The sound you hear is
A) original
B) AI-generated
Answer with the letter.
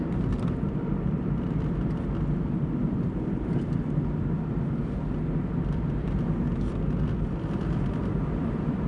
B